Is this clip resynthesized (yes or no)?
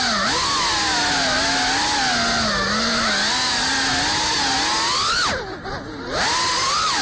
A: no